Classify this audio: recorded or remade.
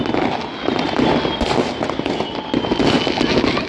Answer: recorded